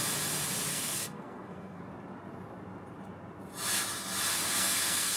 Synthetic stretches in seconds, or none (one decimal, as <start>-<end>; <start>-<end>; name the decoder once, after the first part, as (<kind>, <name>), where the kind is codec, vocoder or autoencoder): 0.7-1.8 (codec, SNAC); 4.3-5.2